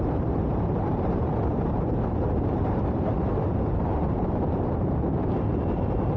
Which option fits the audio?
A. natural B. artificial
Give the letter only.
B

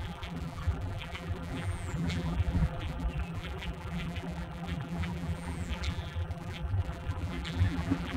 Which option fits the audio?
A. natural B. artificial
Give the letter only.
B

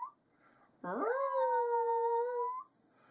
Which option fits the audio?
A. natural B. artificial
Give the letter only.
A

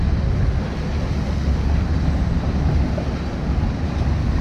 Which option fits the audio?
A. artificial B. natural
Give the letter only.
B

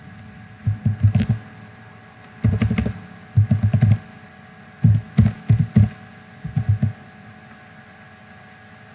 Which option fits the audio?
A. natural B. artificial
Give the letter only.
A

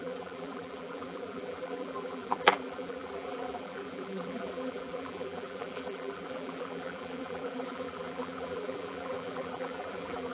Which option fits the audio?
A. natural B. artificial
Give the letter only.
B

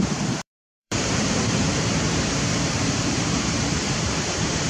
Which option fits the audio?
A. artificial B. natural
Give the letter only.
A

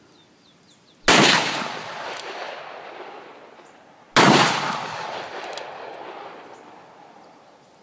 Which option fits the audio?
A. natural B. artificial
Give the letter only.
A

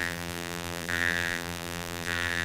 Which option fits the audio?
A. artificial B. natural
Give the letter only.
A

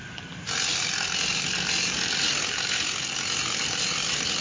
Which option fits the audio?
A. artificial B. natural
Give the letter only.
B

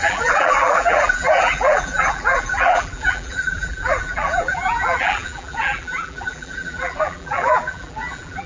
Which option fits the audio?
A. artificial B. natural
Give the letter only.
A